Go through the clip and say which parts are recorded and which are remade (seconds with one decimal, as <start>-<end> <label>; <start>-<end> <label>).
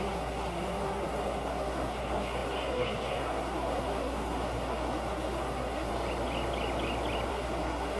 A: 0.0-5.9 remade; 5.9-7.3 recorded; 7.3-8.0 remade